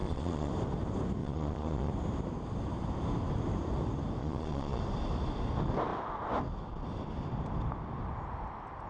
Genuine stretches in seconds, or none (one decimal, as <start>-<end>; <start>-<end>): 0.5-1.2; 1.9-4.2; 4.8-8.9